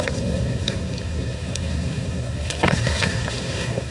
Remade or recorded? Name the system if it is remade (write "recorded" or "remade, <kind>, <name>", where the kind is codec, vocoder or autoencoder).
remade, codec, SNAC